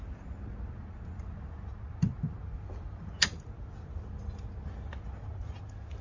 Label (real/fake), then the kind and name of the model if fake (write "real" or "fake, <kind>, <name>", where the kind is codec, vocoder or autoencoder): real